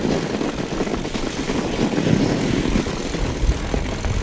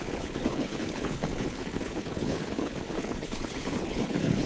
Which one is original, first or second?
first